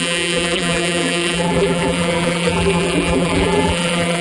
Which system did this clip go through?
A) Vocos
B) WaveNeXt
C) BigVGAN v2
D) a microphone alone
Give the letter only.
C